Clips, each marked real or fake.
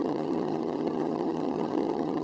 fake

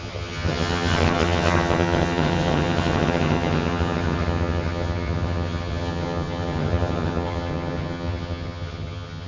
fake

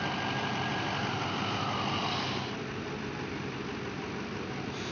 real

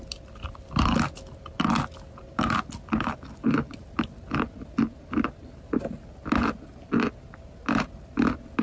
real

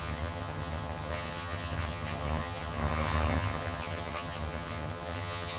fake